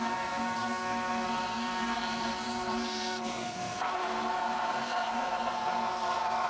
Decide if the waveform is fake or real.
fake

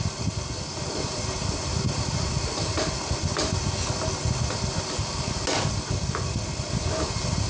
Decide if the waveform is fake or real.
real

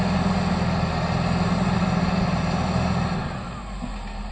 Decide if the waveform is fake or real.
real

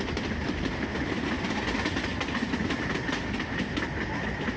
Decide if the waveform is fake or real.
real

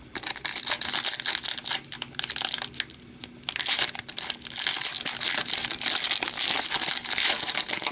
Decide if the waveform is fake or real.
real